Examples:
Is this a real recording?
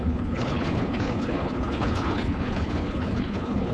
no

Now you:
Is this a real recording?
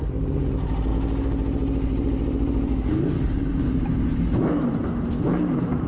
yes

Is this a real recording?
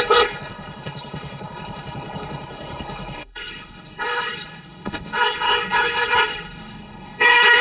no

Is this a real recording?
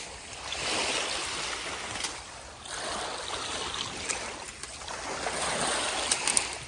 yes